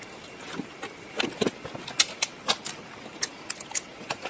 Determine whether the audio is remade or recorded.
recorded